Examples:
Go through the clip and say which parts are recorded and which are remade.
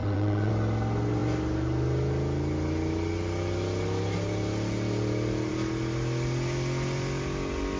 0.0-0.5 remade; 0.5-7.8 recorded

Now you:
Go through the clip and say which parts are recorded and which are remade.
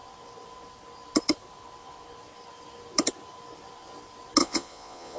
0.0-4.4 recorded; 4.4-5.2 remade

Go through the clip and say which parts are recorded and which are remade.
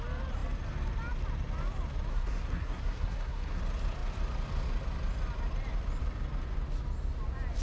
0.0-2.1 recorded; 2.1-3.6 remade; 3.6-7.6 recorded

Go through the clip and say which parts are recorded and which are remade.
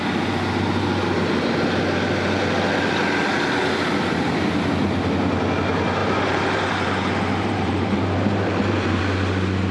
0.0-6.0 recorded; 6.0-9.0 remade; 9.0-9.7 recorded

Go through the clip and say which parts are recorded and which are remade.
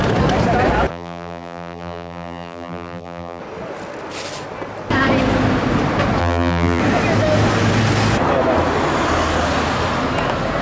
0.0-0.9 recorded; 0.9-3.4 remade; 3.4-6.2 recorded; 6.2-6.8 remade; 6.8-10.6 recorded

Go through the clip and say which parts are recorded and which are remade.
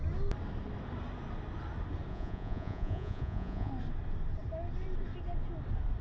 0.0-2.1 recorded; 2.1-3.7 remade; 3.7-6.0 recorded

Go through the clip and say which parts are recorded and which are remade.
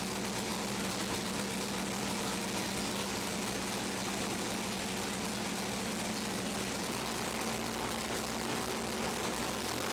0.0-9.9 recorded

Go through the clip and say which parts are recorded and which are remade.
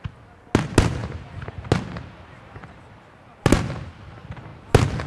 0.0-5.1 recorded